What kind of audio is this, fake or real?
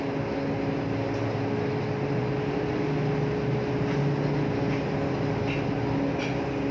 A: real